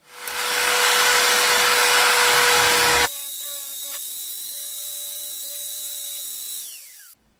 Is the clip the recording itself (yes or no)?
no